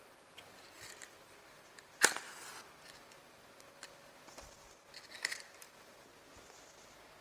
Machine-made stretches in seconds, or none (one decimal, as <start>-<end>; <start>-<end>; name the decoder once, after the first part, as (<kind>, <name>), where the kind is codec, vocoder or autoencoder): 0.0-6.1 (vocoder, BigVGAN v2)